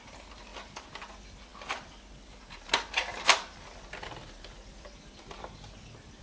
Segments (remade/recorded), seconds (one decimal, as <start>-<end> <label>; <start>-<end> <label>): 0.0-6.2 recorded